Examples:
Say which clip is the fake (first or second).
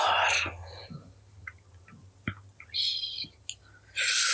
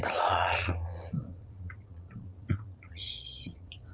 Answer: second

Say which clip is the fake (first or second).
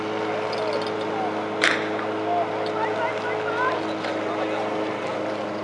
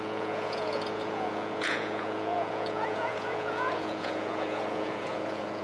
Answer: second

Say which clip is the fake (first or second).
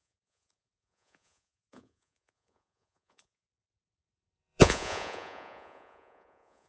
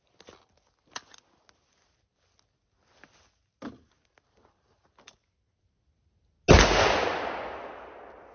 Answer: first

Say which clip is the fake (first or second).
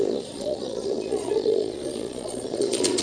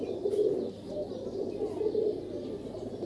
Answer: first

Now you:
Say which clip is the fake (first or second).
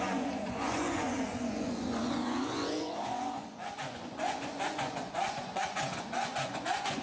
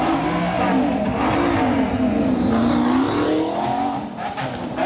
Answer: first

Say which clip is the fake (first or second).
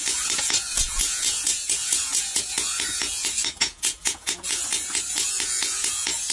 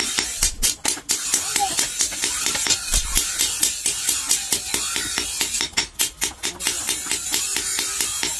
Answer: first